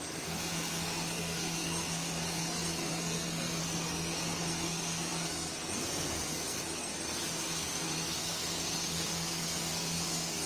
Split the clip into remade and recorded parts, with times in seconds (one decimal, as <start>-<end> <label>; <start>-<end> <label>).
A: 0.0-10.5 remade